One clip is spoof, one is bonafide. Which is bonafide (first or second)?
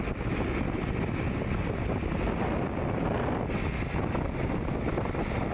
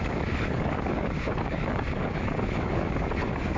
first